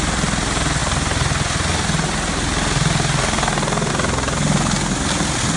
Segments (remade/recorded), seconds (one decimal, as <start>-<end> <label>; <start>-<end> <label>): 0.0-5.6 recorded